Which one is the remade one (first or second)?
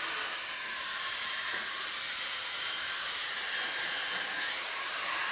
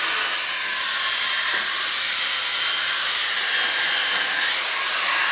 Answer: first